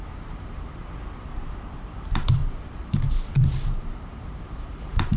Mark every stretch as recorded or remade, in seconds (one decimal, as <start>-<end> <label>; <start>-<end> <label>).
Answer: 0.0-0.8 remade; 0.8-1.7 recorded; 1.7-5.2 remade